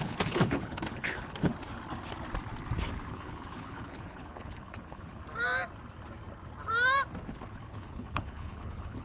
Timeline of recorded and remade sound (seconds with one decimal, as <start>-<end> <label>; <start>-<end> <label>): 0.0-1.5 remade; 1.5-3.1 recorded; 3.1-5.2 remade; 5.2-7.5 recorded; 7.5-9.0 remade